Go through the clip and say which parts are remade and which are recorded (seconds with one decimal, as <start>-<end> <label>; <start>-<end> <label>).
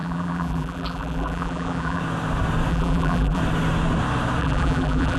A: 0.0-2.0 remade; 2.0-2.7 recorded; 2.7-3.4 remade; 3.4-4.4 recorded; 4.4-5.2 remade